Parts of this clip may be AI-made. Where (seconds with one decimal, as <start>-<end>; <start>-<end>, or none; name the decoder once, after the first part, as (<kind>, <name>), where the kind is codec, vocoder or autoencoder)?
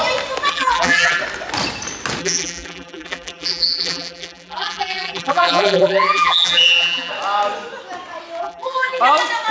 0.5-1.2 (vocoder, BigVGAN v2); 2.2-7.1; 8.4-9.0